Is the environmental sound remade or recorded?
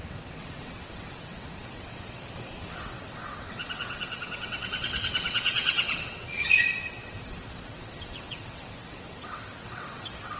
remade